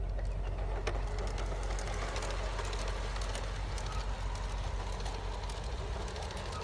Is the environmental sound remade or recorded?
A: recorded